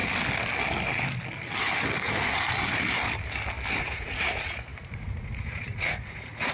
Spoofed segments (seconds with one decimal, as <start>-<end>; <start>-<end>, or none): 3.8-6.5